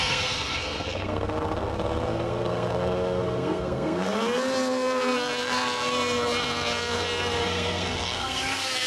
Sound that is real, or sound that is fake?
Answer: fake